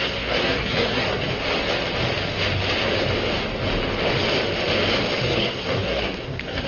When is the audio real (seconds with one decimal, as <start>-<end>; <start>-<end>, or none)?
1.2-5.2